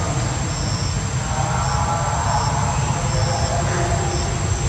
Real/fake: real